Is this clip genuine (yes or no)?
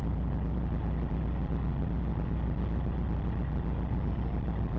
yes